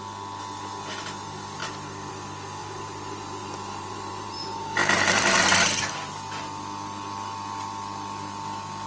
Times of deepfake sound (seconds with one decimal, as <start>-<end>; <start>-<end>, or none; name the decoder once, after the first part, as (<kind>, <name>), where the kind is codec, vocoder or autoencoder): 1.6-2.1 (vocoder, BigVGAN v2); 2.6-5.7